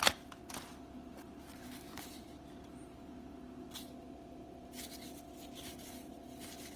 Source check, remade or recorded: recorded